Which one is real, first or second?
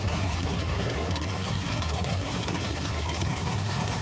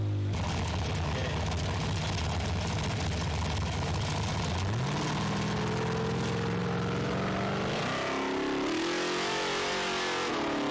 second